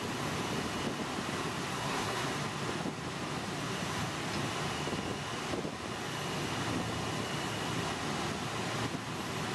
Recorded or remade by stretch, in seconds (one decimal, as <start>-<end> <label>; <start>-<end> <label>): 0.0-1.7 recorded; 1.7-2.3 remade; 2.3-9.5 recorded